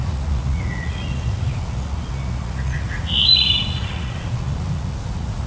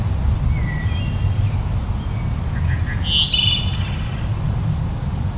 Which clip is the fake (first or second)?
first